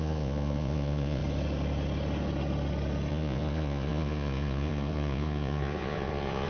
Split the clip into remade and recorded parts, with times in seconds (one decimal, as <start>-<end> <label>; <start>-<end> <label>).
0.0-1.2 remade; 1.2-3.1 recorded; 3.1-6.5 remade